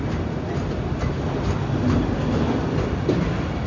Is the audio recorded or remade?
recorded